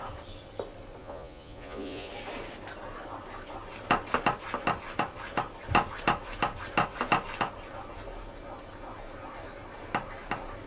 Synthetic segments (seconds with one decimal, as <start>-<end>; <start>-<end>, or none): 1.0-2.1